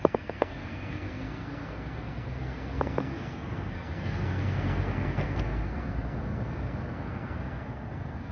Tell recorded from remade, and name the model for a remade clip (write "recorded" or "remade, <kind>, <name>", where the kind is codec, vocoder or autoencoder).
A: remade, codec, SNAC